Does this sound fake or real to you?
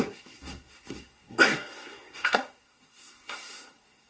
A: fake